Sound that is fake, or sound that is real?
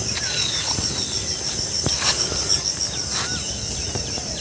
real